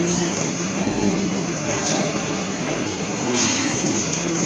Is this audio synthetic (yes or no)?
yes